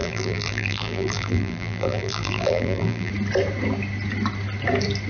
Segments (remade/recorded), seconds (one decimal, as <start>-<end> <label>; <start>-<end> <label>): 0.0-3.1 remade; 3.1-5.1 recorded